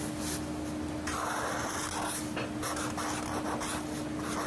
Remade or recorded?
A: recorded